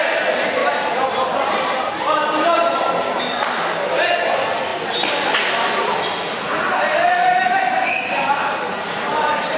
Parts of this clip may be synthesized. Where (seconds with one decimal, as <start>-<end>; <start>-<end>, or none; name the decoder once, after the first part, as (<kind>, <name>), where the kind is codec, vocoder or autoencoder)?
0.6-1.9 (vocoder, BigVGAN v2); 8.4-9.6